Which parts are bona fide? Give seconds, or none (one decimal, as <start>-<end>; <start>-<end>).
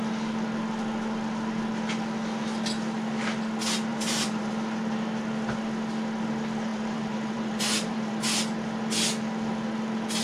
0.0-3.9; 4.5-6.7; 8.2-10.2